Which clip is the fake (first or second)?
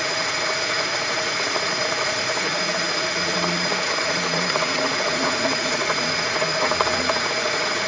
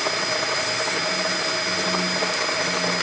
first